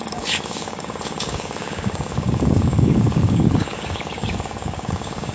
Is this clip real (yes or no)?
no